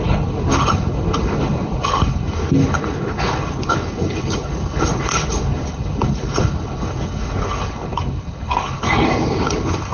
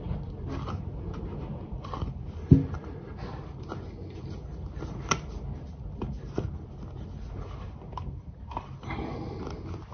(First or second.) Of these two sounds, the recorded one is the second